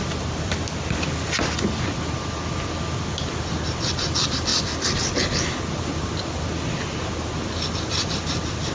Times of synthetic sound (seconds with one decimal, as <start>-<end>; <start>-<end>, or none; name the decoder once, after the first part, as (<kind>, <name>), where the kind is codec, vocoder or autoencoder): none